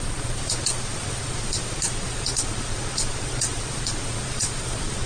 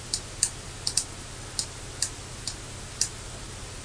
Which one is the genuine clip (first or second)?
second